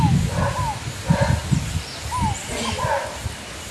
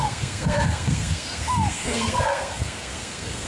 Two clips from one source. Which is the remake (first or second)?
second